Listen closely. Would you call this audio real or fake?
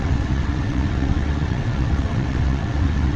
fake